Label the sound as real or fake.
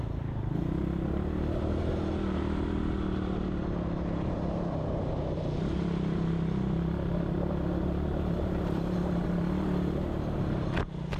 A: real